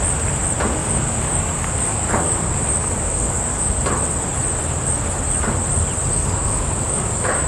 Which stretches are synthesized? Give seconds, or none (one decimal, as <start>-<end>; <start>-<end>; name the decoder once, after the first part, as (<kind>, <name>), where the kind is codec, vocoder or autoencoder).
0.8-3.8 (codec, DAC); 6.1-7.5